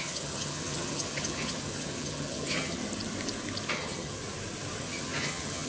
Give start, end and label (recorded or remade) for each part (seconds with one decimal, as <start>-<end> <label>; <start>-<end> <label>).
0.0-2.8 remade; 2.8-3.7 recorded; 3.7-4.2 remade; 4.2-4.8 recorded; 4.8-5.7 remade